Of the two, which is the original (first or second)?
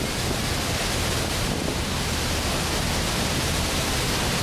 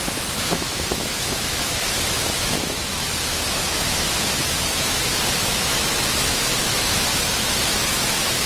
first